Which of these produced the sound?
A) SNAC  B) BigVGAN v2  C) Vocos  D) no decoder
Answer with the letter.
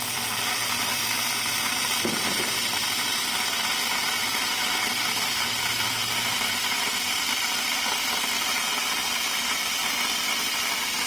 B